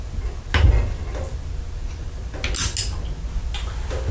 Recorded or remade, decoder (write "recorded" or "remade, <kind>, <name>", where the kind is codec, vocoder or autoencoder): recorded